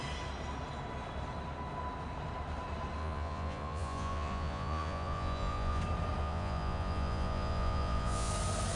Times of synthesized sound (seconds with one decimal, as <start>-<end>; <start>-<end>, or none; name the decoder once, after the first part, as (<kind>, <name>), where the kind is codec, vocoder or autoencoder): 3.0-5.8 (vocoder, Vocos); 6.2-8.3